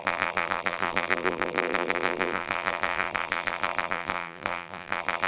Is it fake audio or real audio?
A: fake